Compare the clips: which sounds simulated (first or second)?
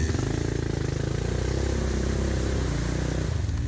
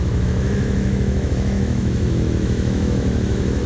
second